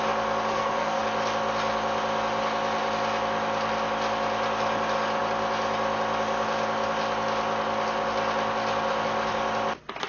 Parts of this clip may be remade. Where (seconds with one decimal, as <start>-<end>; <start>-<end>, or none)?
0.5-1.0